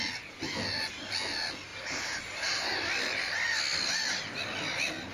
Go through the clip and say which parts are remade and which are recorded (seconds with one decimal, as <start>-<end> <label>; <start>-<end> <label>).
0.0-1.7 recorded; 1.7-2.8 remade; 2.8-5.1 recorded